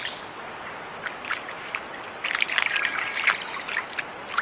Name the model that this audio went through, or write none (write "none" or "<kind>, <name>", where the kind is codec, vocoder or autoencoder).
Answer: none